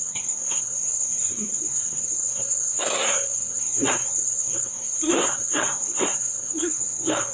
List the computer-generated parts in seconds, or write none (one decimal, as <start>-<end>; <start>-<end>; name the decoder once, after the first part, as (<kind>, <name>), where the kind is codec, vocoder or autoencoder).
0.0-7.3 (codec, SNAC)